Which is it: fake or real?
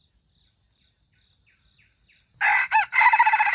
real